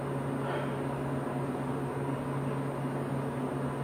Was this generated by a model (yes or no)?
no